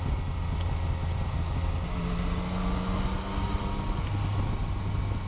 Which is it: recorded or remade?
recorded